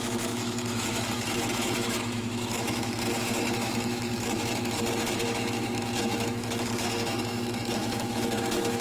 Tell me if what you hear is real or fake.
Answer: fake